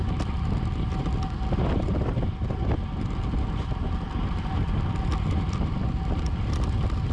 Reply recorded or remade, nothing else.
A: recorded